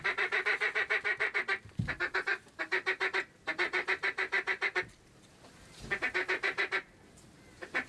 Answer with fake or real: fake